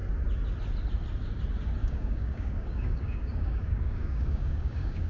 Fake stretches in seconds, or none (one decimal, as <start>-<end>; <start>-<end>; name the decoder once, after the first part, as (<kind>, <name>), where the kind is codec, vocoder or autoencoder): 1.8-5.1 (codec, DAC)